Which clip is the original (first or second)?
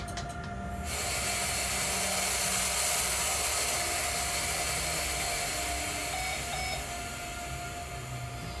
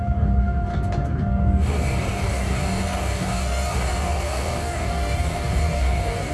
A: first